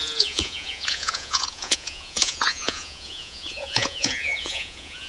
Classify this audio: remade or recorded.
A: remade